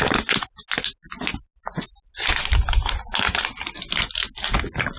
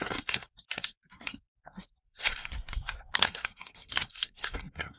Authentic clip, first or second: first